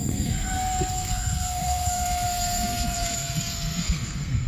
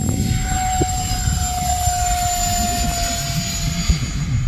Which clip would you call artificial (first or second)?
first